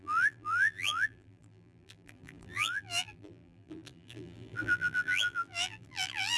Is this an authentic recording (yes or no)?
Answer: no